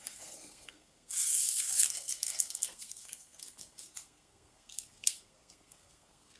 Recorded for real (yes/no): no